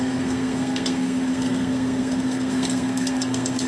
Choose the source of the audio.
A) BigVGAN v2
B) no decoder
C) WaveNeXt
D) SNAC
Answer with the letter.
D